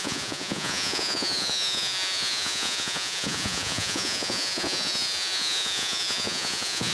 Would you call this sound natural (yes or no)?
no